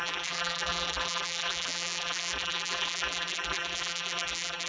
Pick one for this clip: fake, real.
fake